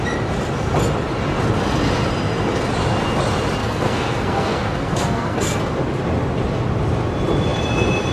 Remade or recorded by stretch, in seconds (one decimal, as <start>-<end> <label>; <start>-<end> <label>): 0.0-3.6 recorded; 3.6-5.6 remade; 5.6-8.1 recorded